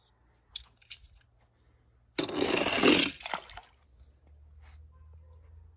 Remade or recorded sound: recorded